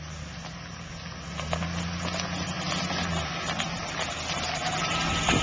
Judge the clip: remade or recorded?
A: recorded